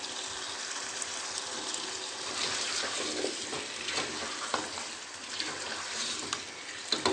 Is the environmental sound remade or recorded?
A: recorded